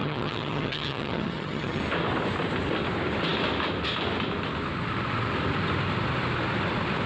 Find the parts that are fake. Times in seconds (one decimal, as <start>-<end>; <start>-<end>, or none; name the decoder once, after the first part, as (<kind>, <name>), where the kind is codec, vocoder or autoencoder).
0.0-1.8 (vocoder, HiFi-GAN)